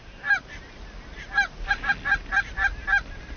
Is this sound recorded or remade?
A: recorded